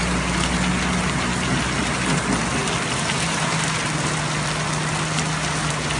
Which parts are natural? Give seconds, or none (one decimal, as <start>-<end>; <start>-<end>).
0.0-6.0